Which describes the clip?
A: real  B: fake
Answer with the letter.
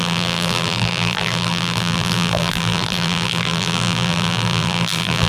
B